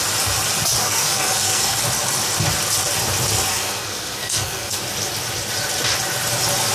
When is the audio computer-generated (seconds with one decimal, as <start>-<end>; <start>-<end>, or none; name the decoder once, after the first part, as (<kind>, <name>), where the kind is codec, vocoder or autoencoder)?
0.8-1.8 (codec, SNAC); 3.5-4.8